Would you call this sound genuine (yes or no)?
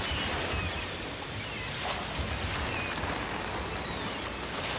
yes